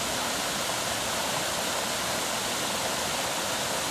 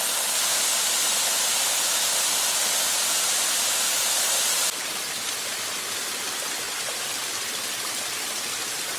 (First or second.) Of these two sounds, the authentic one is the first